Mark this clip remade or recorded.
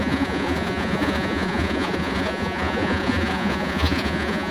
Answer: remade